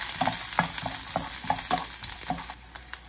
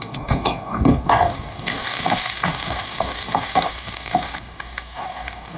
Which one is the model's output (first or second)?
second